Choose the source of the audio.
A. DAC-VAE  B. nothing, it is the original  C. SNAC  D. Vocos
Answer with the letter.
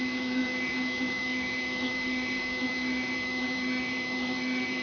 A